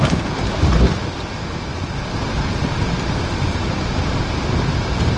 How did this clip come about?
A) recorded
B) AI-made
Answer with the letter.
A